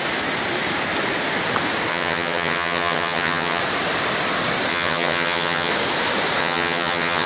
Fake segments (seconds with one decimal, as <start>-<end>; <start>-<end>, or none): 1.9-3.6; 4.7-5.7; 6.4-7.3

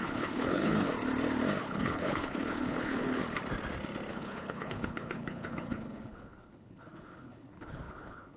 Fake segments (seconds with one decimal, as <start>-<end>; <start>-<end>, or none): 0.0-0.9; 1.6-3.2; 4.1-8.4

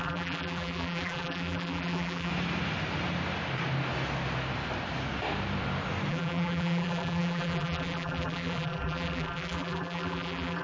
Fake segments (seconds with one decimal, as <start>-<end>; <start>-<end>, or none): 0.0-2.3; 6.1-10.6

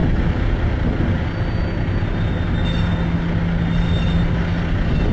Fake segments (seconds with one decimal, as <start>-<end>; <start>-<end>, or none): none

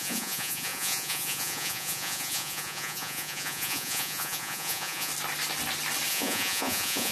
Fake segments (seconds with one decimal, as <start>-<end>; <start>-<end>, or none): 0.0-5.1; 6.1-7.1

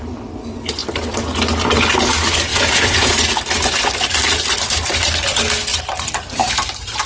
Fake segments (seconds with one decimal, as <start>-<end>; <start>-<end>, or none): 2.5-3.1